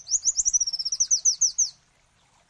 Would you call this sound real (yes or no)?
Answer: yes